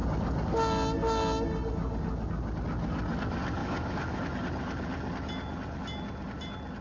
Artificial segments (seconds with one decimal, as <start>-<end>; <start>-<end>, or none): 3.6-4.3